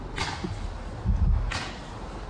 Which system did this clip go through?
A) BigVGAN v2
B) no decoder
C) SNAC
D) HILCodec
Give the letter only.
B